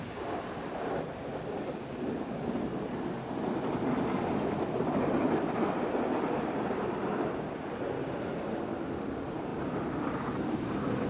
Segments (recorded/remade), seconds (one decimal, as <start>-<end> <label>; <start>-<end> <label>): 0.0-11.1 recorded